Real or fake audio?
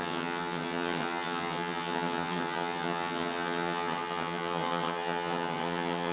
fake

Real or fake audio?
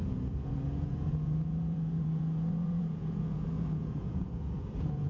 fake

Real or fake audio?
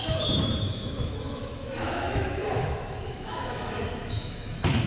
fake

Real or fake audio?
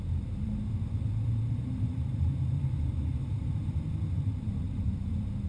fake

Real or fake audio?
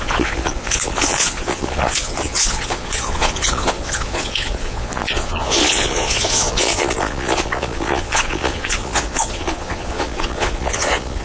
fake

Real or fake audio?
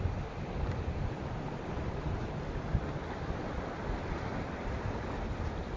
real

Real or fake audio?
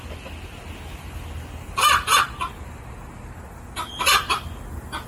real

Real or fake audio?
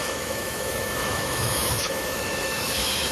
fake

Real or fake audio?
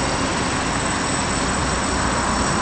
real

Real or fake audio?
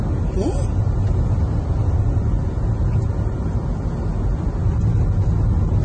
real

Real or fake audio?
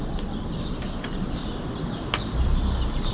real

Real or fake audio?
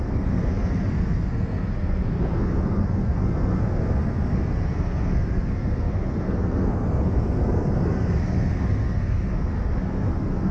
fake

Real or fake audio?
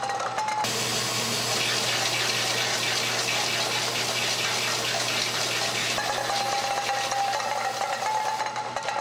real